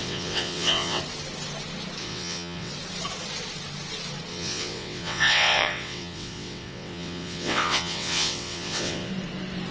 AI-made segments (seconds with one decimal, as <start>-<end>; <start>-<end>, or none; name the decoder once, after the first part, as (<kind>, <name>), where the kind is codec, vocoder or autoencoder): 0.0-1.0 (vocoder, WaveNeXt); 2.0-2.7; 4.3-9.1